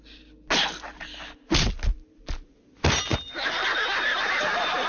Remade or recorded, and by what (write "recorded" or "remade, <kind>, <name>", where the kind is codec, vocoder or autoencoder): recorded